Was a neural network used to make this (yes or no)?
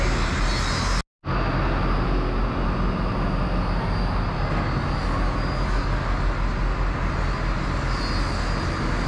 no